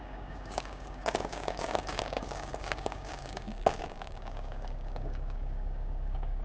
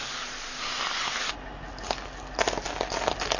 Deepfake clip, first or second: first